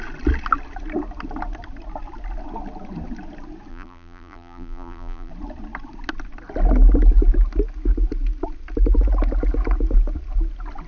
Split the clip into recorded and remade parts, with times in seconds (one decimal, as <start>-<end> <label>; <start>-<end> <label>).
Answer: 0.0-3.7 recorded; 3.7-5.3 remade; 5.3-10.9 recorded